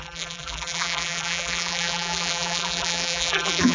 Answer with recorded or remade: remade